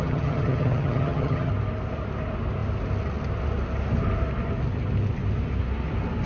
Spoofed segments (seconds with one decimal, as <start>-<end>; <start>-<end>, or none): 0.0-1.5